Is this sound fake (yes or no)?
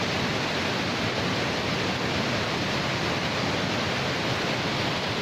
no